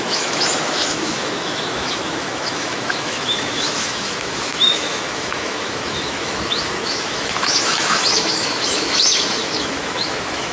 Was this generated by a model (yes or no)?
yes